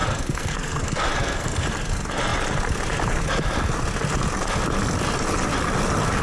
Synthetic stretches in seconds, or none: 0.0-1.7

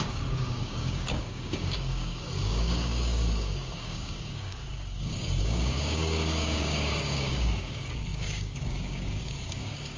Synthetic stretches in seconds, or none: 0.0-10.0